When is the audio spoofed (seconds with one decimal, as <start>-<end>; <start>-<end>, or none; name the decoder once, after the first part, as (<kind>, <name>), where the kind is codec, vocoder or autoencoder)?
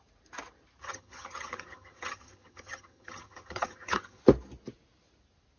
0.8-4.2 (vocoder, HiFi-GAN)